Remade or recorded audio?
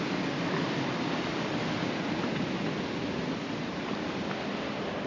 recorded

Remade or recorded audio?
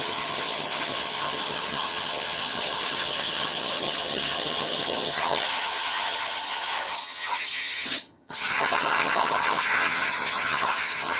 remade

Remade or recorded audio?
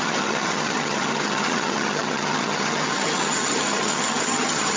remade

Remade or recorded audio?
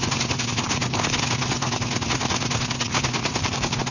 recorded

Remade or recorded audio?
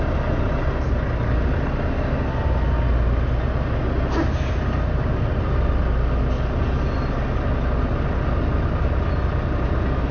recorded